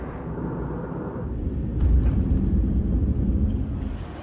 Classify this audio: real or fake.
real